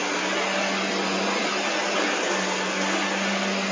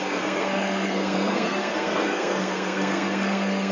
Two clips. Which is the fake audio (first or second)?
second